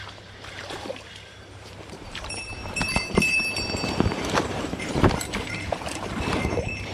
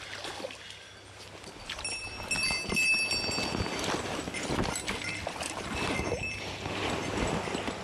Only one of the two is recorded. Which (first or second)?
second